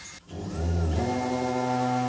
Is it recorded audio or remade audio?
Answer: recorded